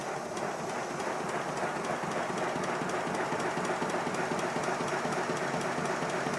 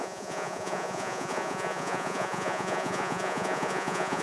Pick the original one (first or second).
first